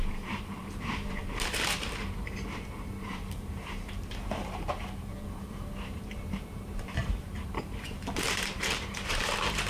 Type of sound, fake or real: fake